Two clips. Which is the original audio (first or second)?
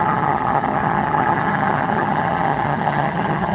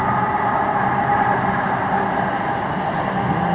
second